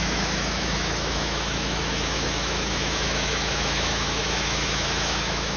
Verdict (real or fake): fake